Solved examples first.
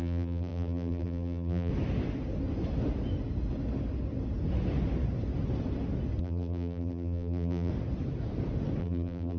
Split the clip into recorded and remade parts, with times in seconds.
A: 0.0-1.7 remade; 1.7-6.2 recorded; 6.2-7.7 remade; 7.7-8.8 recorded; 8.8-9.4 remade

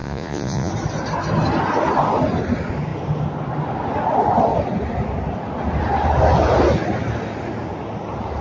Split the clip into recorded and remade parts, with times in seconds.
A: 0.0-0.7 remade; 0.7-8.4 recorded

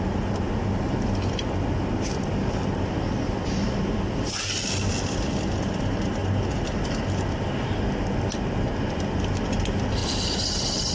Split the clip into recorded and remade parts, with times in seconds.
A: 0.0-10.0 recorded; 10.0-10.9 remade

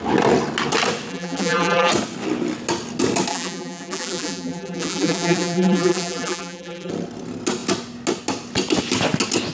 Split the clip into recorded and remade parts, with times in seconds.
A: 0.0-1.1 recorded; 1.1-1.9 remade; 1.9-3.3 recorded; 3.3-6.9 remade; 6.9-9.5 recorded

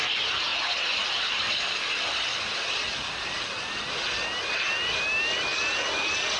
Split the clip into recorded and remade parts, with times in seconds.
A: 0.0-6.4 recorded

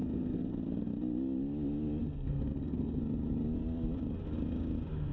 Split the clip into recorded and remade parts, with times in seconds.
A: 0.0-0.5 remade; 0.5-2.0 recorded; 2.0-3.0 remade; 3.0-5.1 recorded

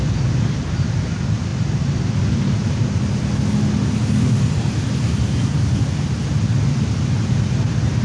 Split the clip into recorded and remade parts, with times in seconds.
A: 0.0-8.0 recorded